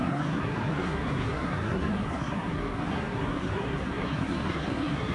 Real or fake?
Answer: fake